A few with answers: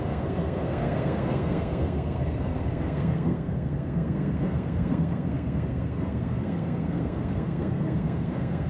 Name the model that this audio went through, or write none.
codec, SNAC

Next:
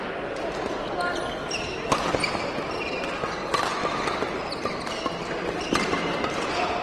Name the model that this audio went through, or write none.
none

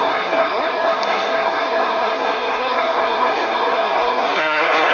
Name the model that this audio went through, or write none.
codec, SNAC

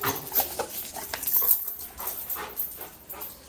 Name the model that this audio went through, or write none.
none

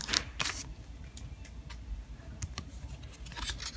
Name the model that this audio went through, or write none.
none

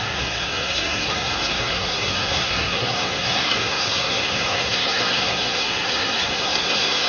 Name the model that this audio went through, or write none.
codec, SNAC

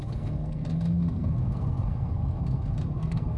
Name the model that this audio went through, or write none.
codec, SNAC